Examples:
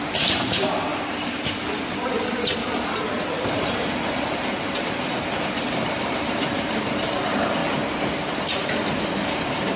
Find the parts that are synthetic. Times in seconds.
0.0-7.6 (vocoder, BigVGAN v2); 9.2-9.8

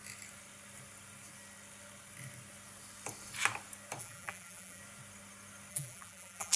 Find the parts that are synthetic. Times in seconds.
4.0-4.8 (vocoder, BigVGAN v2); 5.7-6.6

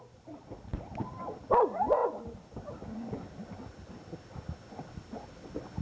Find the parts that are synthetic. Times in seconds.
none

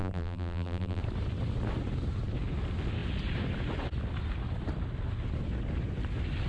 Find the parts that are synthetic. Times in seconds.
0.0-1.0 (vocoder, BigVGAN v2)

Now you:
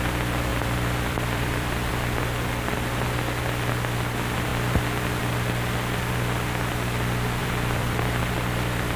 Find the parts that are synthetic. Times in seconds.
0.5-1.9 (vocoder, BigVGAN v2); 7.4-8.2